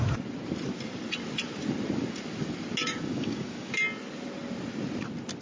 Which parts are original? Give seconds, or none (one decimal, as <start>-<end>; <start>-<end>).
0.0-2.9; 3.7-5.4